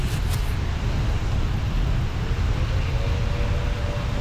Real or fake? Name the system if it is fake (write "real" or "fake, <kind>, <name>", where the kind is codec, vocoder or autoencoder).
real